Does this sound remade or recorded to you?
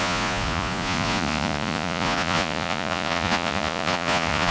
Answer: remade